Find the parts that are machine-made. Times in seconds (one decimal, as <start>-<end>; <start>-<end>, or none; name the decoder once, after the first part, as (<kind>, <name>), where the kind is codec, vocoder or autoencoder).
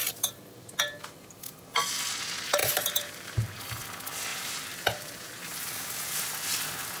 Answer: 2.6-3.6 (vocoder, BigVGAN v2); 4.3-5.7